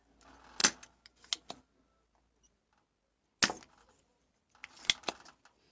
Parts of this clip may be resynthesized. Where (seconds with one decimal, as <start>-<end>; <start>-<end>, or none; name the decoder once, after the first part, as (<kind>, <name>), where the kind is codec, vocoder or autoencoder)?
none